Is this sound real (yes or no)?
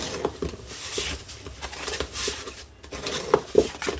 yes